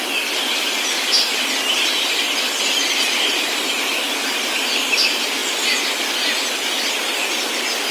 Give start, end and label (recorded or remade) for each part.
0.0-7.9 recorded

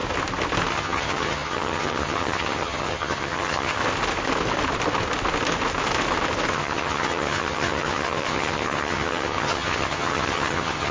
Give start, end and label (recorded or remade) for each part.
0.0-0.7 recorded; 0.7-3.8 remade; 3.8-6.5 recorded; 6.5-10.9 remade

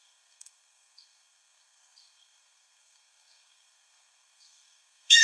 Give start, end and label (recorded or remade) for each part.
0.0-5.2 remade